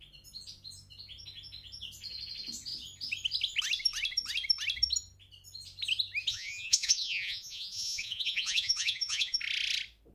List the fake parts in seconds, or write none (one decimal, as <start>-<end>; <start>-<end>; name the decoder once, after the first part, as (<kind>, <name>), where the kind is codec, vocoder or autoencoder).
6.3-9.4 (vocoder, Vocos)